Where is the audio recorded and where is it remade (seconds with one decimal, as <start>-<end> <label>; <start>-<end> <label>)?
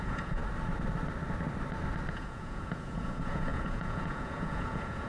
0.0-0.4 remade; 0.4-2.1 recorded; 2.1-5.1 remade